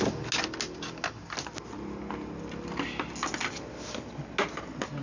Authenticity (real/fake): real